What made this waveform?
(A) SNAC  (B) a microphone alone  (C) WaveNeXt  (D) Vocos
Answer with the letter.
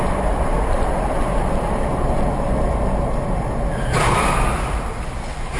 B